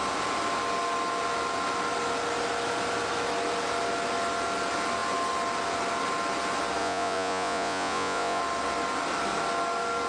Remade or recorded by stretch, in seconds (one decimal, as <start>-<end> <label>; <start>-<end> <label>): 0.0-6.8 recorded; 6.8-8.4 remade; 8.4-10.1 recorded